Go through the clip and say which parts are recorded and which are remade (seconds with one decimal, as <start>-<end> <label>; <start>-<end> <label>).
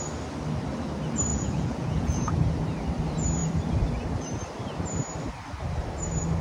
0.0-1.3 recorded; 1.3-2.3 remade; 2.3-6.4 recorded